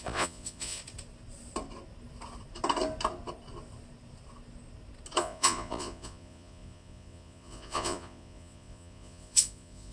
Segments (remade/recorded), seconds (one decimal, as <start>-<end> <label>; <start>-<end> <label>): 0.0-0.8 remade; 0.8-5.2 recorded; 5.2-9.9 remade